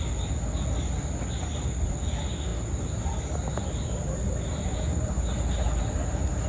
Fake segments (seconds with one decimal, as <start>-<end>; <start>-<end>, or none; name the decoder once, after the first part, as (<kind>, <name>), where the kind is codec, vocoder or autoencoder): none